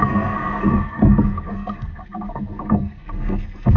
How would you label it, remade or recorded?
remade